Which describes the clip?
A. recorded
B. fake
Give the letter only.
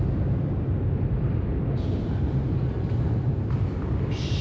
A